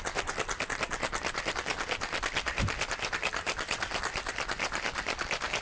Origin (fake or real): real